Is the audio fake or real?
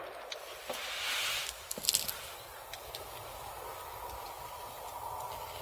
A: real